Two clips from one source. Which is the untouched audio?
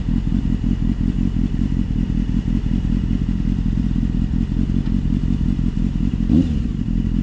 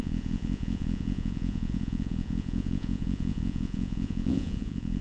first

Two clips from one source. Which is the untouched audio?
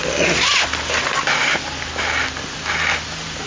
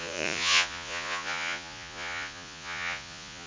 first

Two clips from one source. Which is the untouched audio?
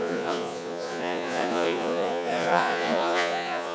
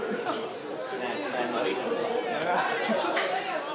second